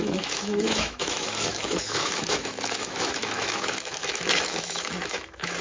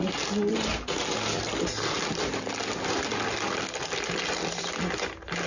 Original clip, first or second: second